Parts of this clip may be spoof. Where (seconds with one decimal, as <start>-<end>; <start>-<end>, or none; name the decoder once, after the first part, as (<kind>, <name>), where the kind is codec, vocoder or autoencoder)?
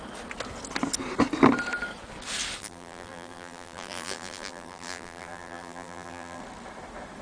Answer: 2.6-6.4 (vocoder, BigVGAN v2)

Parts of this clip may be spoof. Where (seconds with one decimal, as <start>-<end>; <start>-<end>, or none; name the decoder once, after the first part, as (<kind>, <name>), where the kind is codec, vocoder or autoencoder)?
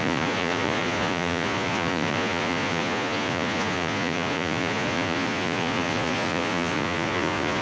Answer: 0.0-7.6 (vocoder, Vocos)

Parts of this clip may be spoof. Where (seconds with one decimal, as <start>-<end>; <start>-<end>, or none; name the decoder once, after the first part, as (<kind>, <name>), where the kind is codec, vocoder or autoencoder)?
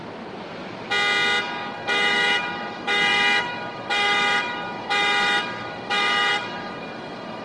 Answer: 1.7-7.4 (autoencoder, DAC-VAE)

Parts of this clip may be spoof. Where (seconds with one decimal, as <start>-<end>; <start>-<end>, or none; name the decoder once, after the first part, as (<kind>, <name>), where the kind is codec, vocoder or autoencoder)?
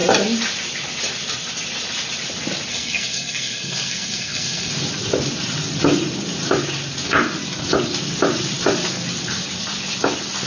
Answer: 2.7-4.7 (codec, SNAC)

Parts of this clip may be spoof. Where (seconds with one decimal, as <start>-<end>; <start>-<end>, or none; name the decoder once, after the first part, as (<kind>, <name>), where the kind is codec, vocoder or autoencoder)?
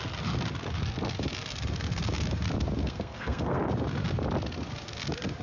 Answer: 2.8-3.6 (codec, SNAC)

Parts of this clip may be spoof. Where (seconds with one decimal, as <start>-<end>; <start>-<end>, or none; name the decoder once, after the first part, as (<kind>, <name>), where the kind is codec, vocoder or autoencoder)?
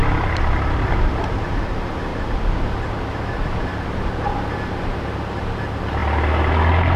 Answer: 0.0-1.6 (vocoder, BigVGAN v2); 2.1-3.9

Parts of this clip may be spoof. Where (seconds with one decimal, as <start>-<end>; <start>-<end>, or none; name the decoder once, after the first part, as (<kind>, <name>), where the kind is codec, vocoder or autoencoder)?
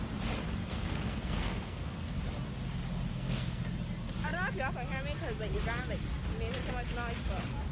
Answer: 0.6-2.2 (codec, SNAC); 3.1-3.6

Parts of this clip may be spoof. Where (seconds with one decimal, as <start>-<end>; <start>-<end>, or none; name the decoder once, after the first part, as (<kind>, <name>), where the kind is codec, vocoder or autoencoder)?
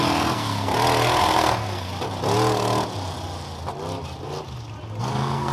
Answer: 0.0-0.7 (codec, SNAC); 1.2-1.9; 5.0-5.5